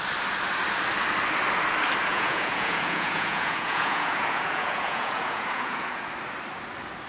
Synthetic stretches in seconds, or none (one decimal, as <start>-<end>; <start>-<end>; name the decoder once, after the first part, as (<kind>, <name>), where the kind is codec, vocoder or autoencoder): 2.1-6.0 (vocoder, Vocos)